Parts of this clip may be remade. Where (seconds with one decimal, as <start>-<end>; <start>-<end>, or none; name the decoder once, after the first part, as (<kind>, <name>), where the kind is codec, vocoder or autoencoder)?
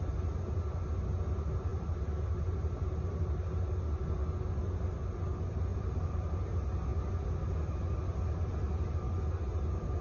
1.7-3.7 (vocoder, BigVGAN v2); 5.7-6.3